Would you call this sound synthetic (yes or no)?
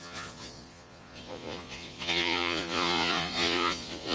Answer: yes